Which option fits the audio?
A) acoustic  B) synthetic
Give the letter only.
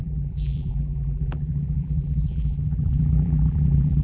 B